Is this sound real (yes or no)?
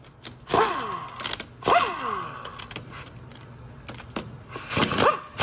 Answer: yes